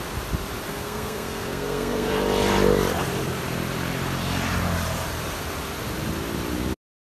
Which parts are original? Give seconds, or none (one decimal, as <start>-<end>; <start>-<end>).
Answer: 0.0-0.7; 2.1-7.1